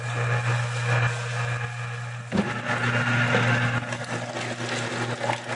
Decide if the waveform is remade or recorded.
recorded